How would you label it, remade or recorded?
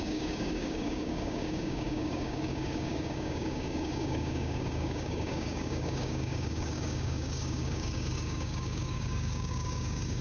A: remade